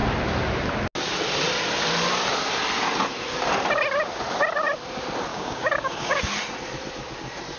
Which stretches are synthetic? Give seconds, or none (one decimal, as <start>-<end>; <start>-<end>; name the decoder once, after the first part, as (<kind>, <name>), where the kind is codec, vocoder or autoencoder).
5.3-6.2 (codec, DAC)